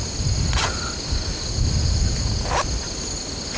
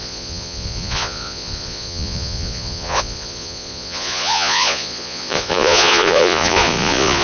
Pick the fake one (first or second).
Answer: second